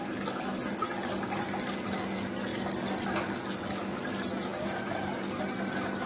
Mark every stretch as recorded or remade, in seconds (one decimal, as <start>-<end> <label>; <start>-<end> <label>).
0.0-6.1 recorded